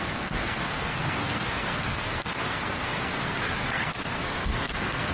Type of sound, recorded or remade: remade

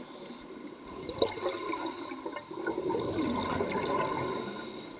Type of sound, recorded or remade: recorded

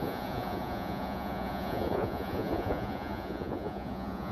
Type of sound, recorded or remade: remade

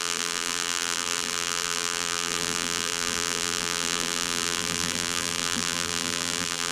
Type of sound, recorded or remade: remade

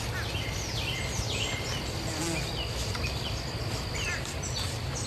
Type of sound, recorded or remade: recorded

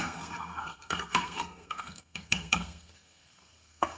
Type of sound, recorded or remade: remade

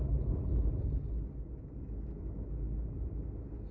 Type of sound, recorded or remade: recorded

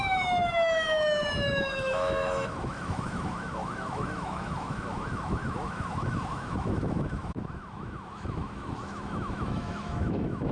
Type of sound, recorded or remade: remade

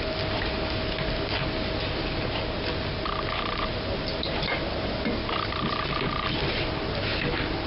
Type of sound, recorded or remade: recorded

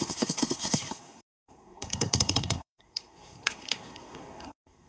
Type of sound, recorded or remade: remade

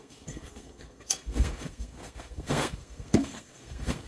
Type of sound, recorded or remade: remade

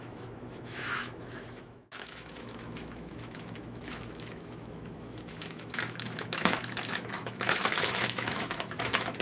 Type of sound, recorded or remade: remade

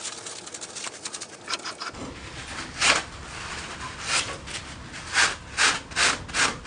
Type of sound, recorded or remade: recorded